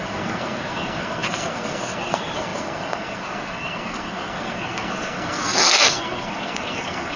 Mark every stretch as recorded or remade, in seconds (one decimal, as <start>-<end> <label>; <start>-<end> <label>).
0.0-7.2 remade